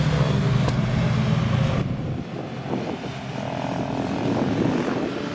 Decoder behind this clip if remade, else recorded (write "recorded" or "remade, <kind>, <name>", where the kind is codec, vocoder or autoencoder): recorded